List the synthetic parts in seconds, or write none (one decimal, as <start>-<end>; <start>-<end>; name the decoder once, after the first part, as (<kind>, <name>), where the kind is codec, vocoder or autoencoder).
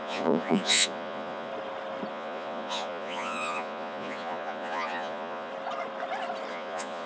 0.0-1.5 (vocoder, Vocos); 2.1-5.5; 6.5-7.1